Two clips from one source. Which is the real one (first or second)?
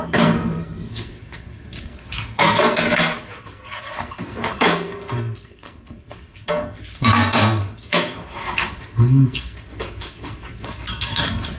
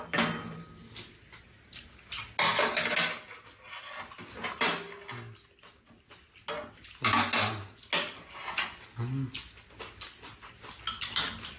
second